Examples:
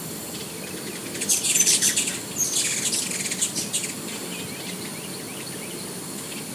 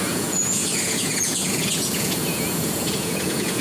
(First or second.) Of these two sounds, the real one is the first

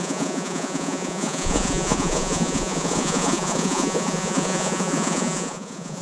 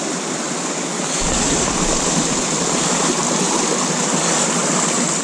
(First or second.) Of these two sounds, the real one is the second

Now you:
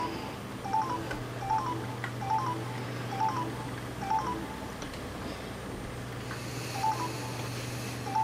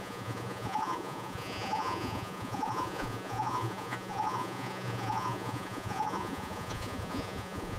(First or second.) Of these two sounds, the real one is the first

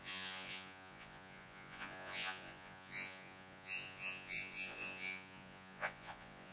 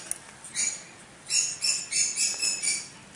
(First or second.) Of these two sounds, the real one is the second